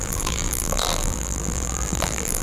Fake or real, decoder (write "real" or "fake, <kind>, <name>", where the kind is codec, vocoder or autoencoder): fake, vocoder, BigVGAN v2